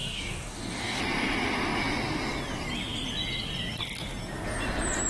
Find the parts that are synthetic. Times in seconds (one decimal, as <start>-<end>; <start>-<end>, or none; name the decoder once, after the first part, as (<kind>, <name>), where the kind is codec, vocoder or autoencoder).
0.0-1.0 (codec, DAC)